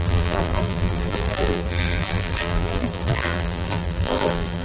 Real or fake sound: fake